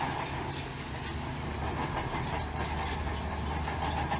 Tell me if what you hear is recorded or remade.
recorded